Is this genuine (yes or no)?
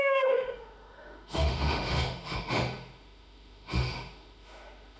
no